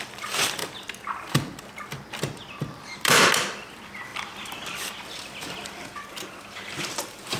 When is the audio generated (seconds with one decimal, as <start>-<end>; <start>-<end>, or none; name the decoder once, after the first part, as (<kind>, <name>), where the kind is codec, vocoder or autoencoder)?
0.0-0.6 (vocoder, BigVGAN v2); 2.8-7.4